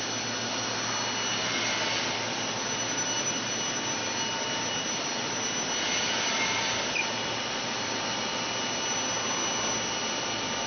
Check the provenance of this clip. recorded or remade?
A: recorded